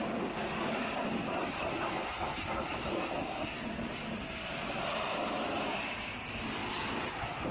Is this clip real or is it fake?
real